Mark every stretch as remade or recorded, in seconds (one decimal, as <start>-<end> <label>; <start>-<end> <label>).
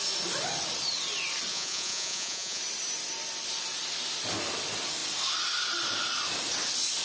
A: 0.0-1.5 recorded; 1.5-2.6 remade; 2.6-7.0 recorded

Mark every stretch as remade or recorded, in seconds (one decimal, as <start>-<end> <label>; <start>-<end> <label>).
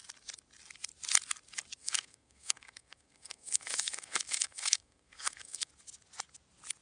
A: 0.0-1.8 recorded; 1.8-5.7 remade; 5.7-6.8 recorded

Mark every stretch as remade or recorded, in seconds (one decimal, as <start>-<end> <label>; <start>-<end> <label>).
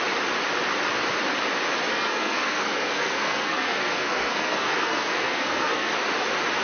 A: 0.0-1.9 recorded; 1.9-5.9 remade; 5.9-6.6 recorded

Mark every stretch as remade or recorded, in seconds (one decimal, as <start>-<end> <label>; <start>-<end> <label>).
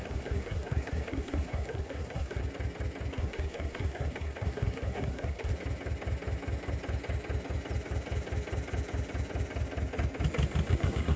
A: 0.0-2.4 remade; 2.4-3.1 recorded; 3.1-5.5 remade; 5.5-10.7 recorded; 10.7-11.2 remade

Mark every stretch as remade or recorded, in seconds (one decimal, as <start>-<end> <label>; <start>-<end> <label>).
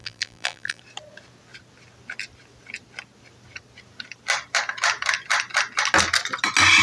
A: 0.0-0.8 remade; 0.8-6.8 recorded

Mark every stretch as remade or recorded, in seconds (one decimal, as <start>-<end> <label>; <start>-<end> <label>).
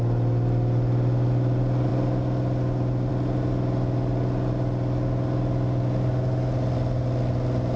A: 0.0-7.8 recorded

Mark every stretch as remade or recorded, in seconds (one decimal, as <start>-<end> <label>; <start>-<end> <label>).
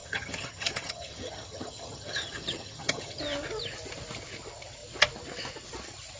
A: 0.0-3.2 remade; 3.2-6.2 recorded